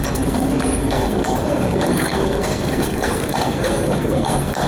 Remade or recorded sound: remade